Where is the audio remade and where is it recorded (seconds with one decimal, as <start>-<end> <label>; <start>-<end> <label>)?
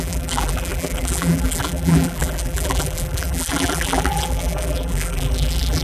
0.0-5.8 remade